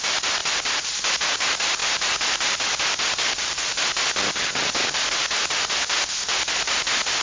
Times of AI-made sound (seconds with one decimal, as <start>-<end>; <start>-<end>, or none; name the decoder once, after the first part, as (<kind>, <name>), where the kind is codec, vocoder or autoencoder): none